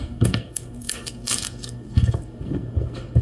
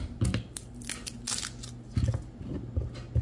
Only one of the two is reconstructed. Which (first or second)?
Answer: first